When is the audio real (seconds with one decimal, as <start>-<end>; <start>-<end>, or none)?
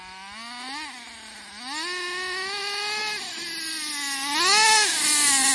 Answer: 0.0-5.5